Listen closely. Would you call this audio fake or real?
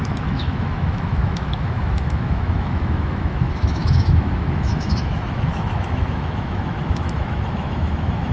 fake